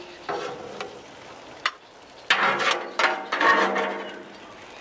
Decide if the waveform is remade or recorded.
recorded